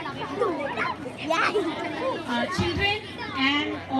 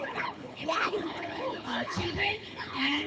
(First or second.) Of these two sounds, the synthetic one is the second